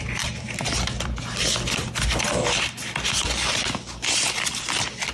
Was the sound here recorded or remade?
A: recorded